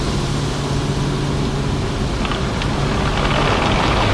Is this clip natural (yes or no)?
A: yes